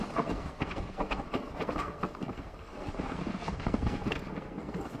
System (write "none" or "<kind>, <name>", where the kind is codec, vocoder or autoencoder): codec, SNAC